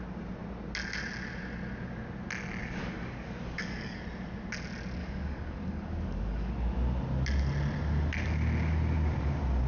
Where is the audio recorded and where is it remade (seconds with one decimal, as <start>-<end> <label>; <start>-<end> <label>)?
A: 0.0-2.6 recorded; 2.6-4.0 remade; 4.0-5.0 recorded; 5.0-6.5 remade; 6.5-9.7 recorded